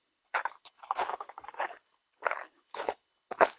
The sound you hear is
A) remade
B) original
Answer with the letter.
A